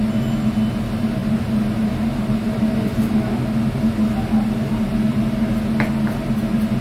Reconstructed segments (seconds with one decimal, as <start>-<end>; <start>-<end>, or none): none

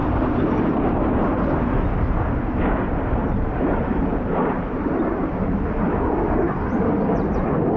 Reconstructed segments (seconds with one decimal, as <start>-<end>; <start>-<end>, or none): 0.0-1.1; 3.2-5.4

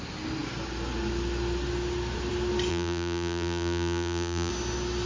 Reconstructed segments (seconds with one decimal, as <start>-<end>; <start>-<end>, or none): 2.7-4.5

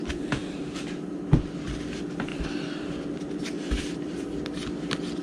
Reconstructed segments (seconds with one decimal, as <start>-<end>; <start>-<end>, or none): 0.4-1.1; 2.3-4.4

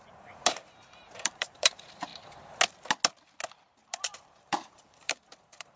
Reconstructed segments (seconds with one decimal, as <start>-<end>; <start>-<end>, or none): 0.0-2.1; 3.8-5.8

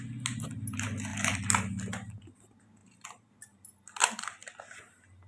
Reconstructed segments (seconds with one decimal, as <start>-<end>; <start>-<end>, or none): 2.8-3.3

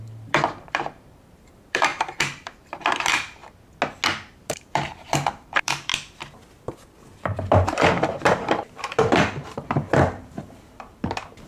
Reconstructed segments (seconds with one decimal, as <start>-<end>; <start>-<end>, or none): 0.0-3.4; 4.3-5.9; 7.2-11.5

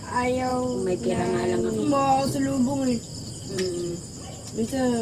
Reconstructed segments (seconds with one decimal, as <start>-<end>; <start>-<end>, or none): 3.1-4.0